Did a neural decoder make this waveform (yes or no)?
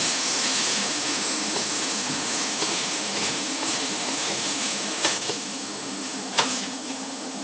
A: yes